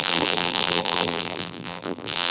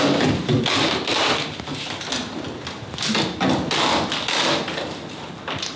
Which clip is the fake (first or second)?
first